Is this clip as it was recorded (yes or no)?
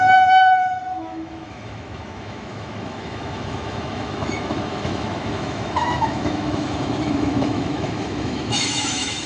no